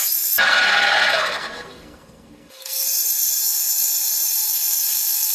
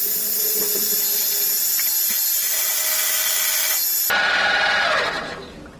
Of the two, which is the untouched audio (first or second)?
second